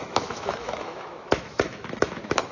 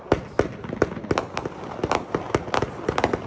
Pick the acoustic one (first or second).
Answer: second